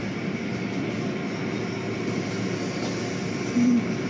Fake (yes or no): no